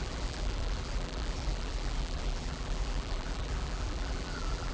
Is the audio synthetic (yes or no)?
yes